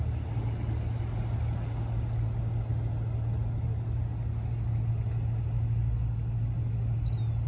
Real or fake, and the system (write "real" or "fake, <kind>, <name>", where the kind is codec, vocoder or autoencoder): real